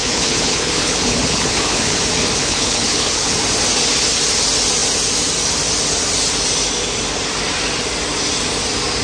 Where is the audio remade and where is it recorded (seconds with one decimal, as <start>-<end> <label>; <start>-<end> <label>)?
0.0-2.0 remade; 2.0-2.4 recorded; 2.4-3.3 remade; 3.3-9.0 recorded